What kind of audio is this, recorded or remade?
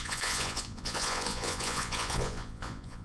remade